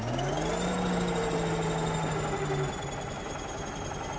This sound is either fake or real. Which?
real